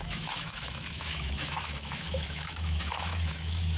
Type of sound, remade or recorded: remade